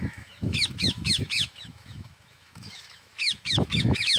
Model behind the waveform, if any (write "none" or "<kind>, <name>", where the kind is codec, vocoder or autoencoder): autoencoder, DAC-VAE